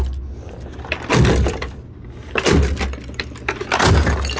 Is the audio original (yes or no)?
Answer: yes